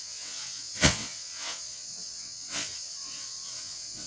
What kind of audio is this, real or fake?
fake